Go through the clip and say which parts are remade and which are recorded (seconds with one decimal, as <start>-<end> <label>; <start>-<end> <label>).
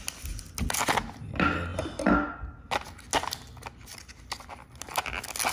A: 0.0-5.5 recorded